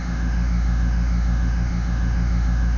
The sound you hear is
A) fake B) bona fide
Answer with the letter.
A